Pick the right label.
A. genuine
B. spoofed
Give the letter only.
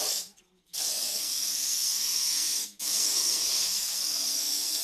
B